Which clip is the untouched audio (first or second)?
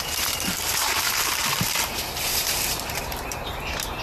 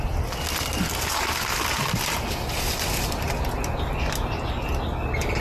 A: second